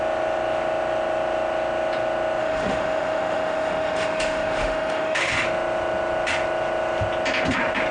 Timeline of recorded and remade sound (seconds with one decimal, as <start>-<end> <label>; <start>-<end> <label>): 0.0-2.4 recorded; 2.4-5.3 remade; 5.3-7.9 recorded